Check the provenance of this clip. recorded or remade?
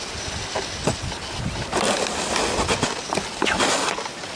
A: recorded